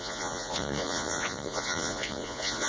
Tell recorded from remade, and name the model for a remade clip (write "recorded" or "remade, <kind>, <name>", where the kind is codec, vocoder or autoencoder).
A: remade, vocoder, Vocos